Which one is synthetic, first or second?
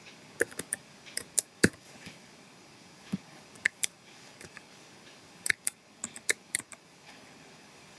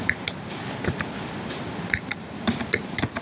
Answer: first